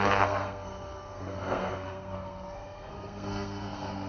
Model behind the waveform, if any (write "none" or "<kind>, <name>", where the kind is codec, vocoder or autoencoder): codec, SNAC